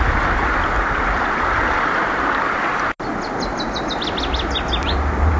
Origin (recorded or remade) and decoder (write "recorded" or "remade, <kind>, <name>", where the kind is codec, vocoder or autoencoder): recorded